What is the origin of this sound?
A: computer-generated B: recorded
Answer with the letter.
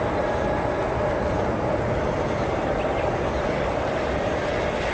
B